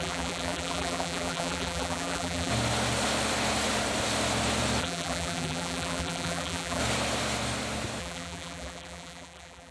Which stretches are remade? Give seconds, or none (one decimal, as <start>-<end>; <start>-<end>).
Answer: 0.0-2.5; 4.8-6.8; 8.0-9.7